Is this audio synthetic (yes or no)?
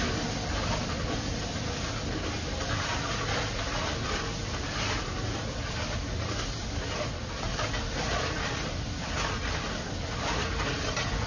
no